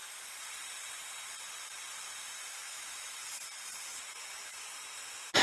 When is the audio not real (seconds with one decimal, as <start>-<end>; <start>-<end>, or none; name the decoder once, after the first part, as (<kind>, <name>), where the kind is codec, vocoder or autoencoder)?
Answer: none